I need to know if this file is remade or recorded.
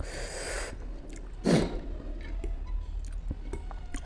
recorded